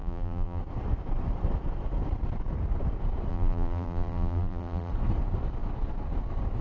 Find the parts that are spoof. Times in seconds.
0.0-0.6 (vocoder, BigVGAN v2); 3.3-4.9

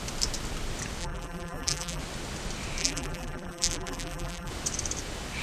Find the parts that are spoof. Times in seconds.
1.0-2.0 (vocoder, BigVGAN v2); 2.8-4.5

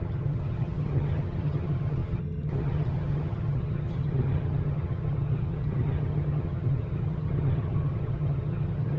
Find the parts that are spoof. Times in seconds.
0.0-9.0 (vocoder, HiFi-GAN)

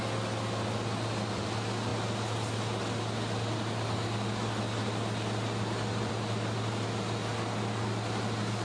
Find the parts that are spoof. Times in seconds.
none

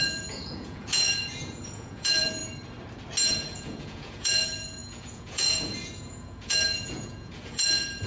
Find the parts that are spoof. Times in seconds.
0.0-2.4 (vocoder, Vocos); 3.3-8.1

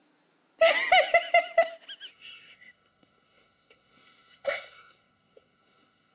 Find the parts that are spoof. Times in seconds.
2.1-6.1 (codec, SNAC)

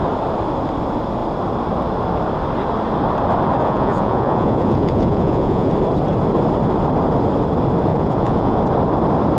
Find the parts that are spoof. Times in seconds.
3.6-5.7 (vocoder, Vocos); 7.9-8.6

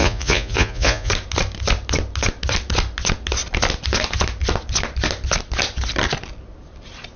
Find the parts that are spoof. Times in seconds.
0.0-1.1 (vocoder, Vocos)